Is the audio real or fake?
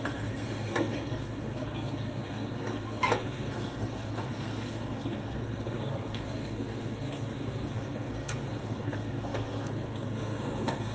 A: fake